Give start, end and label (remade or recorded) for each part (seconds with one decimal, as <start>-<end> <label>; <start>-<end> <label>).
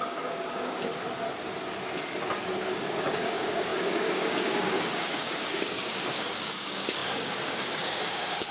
0.0-0.9 remade; 0.9-2.6 recorded; 2.6-8.5 remade